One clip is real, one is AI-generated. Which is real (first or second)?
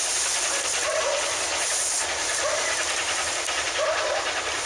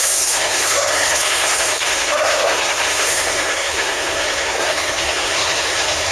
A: first